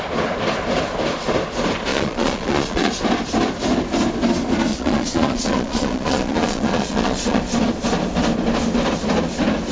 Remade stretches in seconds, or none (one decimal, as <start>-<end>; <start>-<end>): 1.9-2.9; 4.7-7.4